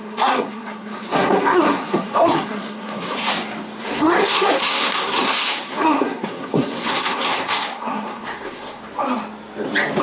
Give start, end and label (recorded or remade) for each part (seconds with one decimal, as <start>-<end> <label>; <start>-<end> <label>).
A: 0.0-3.3 remade; 3.3-3.8 recorded; 3.8-8.8 remade; 8.8-10.0 recorded